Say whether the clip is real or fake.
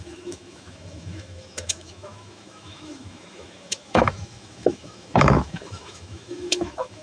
fake